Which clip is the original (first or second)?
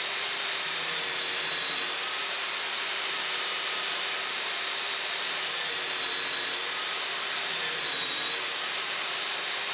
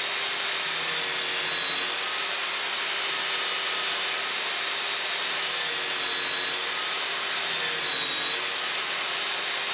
second